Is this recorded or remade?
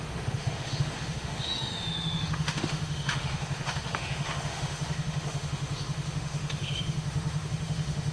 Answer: remade